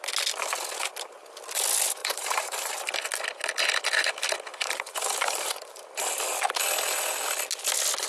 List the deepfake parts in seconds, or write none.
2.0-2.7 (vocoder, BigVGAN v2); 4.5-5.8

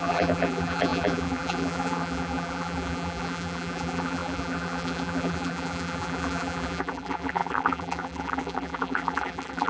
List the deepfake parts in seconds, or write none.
0.0-9.7 (vocoder, BigVGAN v2)

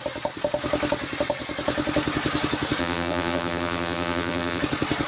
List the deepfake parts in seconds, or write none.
2.8-4.6 (vocoder, BigVGAN v2)

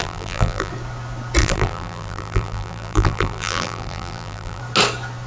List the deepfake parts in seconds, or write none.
0.0-0.7 (vocoder, BigVGAN v2); 1.4-4.6

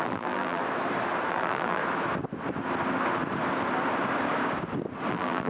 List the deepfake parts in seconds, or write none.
0.0-0.6 (vocoder, BigVGAN v2); 1.3-1.8; 5.1-5.5

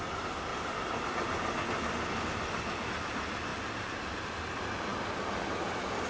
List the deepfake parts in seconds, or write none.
3.5-4.1 (vocoder, BigVGAN v2)

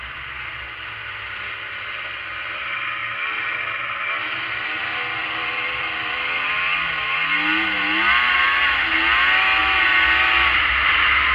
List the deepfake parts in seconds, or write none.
5.2-6.5 (vocoder, BigVGAN v2)